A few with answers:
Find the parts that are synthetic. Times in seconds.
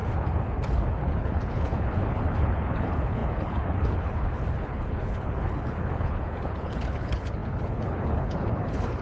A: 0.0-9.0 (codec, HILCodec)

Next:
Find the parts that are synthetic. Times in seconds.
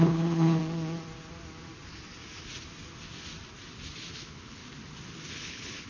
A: 0.0-0.6 (codec, HILCodec); 4.1-4.6; 5.3-5.9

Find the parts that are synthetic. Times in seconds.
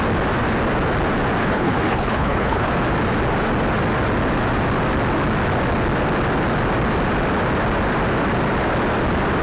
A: 1.4-2.7 (codec, HILCodec)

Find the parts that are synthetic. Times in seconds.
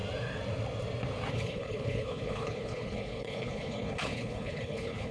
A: 1.3-5.1 (codec, HILCodec)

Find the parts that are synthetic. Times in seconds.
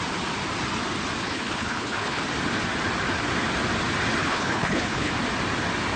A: 1.2-2.2 (codec, HILCodec); 4.2-5.1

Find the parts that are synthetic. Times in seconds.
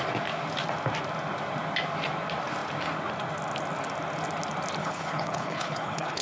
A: 4.8-6.2 (codec, HILCodec)